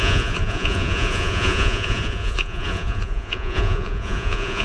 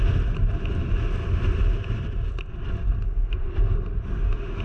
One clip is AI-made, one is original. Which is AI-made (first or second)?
first